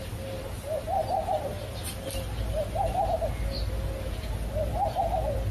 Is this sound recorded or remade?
recorded